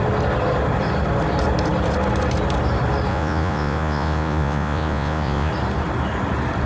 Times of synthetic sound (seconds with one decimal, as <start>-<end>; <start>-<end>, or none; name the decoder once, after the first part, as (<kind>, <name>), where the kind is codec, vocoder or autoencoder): 3.1-5.5 (vocoder, Vocos)